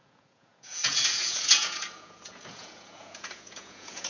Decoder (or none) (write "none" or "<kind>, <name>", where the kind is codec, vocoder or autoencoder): vocoder, Vocos